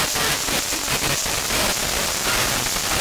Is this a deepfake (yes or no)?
no